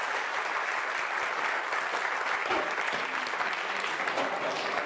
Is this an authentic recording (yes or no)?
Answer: yes